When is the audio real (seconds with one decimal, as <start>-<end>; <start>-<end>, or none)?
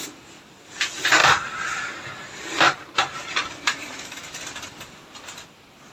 0.0-5.9